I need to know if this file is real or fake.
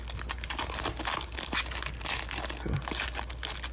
real